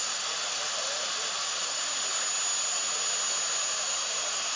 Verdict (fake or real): real